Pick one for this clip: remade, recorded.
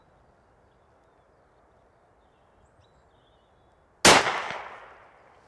recorded